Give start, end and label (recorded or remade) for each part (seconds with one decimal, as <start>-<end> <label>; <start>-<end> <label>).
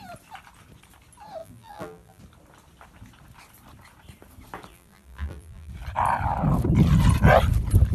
0.0-1.4 recorded; 1.4-2.2 remade; 2.2-4.7 recorded; 4.7-5.7 remade; 5.7-7.9 recorded